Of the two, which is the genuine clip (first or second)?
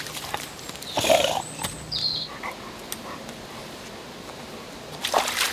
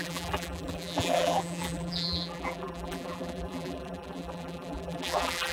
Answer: first